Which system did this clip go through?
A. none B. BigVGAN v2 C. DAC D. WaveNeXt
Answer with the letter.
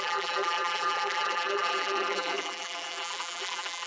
B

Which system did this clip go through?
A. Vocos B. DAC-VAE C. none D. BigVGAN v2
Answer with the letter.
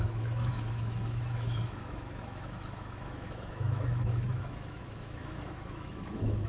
B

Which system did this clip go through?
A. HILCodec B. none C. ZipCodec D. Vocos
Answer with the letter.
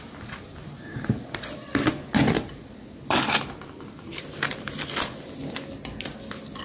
B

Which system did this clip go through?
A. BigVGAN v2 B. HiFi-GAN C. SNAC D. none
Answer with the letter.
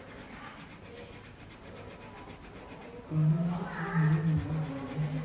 D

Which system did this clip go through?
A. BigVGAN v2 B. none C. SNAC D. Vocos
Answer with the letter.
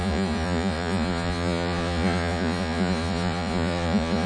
D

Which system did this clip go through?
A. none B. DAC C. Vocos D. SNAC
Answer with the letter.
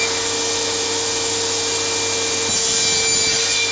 A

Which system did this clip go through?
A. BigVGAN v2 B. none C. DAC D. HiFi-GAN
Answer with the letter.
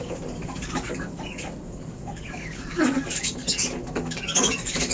C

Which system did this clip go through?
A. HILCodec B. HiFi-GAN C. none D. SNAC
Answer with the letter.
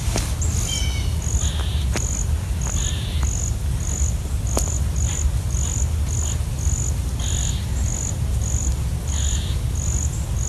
C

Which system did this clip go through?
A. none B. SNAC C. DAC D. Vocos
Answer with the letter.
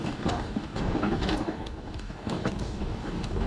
C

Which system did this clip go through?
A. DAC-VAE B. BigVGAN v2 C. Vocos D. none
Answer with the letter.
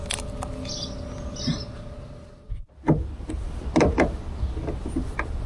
D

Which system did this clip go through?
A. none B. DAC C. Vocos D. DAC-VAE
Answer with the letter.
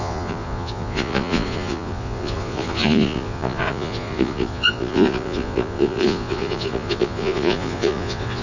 C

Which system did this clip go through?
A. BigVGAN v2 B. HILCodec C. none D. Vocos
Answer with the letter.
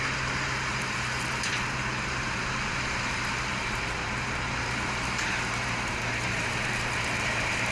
A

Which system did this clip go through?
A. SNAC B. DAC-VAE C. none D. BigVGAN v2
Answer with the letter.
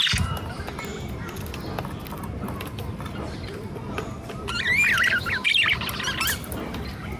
C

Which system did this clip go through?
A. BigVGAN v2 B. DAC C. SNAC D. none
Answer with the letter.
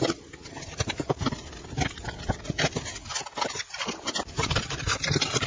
D